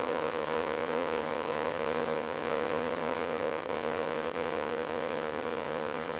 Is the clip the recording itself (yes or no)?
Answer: no